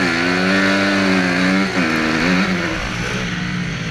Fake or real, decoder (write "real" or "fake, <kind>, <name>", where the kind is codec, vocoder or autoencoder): real